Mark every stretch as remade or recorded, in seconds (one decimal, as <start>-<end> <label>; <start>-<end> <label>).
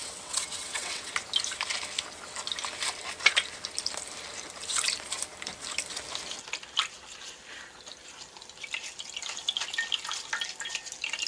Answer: 0.0-1.1 remade; 1.1-11.3 recorded